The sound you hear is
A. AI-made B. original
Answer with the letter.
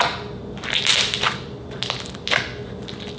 B